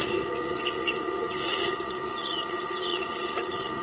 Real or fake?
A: fake